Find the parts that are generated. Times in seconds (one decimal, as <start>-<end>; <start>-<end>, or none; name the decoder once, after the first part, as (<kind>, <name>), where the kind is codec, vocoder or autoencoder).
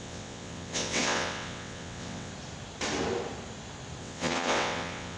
0.0-2.3 (vocoder, WaveNeXt); 4.0-5.2